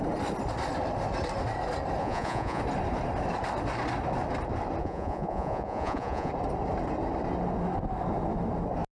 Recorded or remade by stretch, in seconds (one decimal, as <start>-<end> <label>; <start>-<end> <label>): 0.0-2.0 recorded; 2.0-2.6 remade; 2.6-4.8 recorded; 4.8-6.3 remade; 6.3-9.0 recorded